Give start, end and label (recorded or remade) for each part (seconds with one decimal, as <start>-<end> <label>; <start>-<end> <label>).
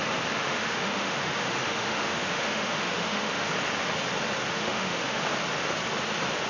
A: 0.0-0.4 recorded; 0.4-3.5 remade; 3.5-4.5 recorded; 4.5-5.2 remade; 5.2-6.5 recorded